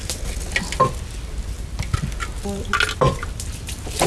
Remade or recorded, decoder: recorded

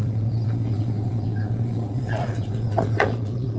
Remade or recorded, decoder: remade, vocoder, Vocos